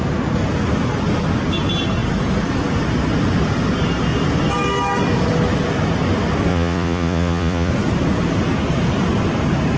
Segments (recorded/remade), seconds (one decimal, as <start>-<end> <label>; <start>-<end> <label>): 0.0-6.5 recorded; 6.5-7.7 remade; 7.7-9.8 recorded